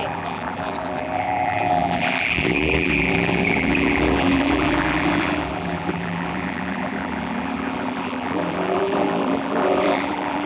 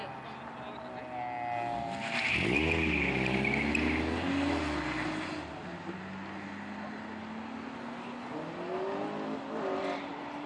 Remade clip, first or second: first